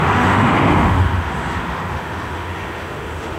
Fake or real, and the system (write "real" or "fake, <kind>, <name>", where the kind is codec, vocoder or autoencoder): fake, autoencoder, DAC-VAE